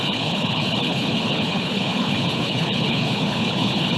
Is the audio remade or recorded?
remade